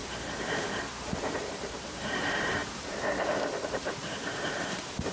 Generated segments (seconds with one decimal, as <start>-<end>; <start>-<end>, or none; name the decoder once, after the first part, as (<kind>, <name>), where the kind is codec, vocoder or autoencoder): 0.0-5.1 (vocoder, BigVGAN v2)